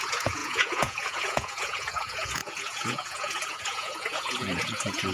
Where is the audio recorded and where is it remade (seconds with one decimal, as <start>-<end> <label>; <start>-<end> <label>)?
0.0-5.1 remade